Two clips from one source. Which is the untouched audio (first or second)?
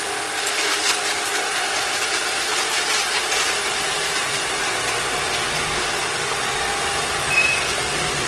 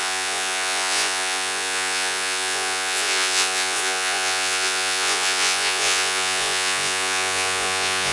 first